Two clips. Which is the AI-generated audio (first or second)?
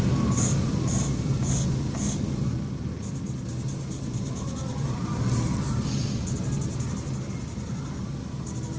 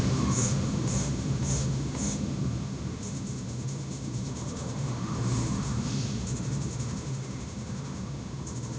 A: second